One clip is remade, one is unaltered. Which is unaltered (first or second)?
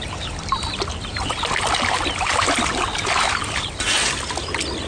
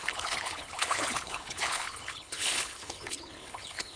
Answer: first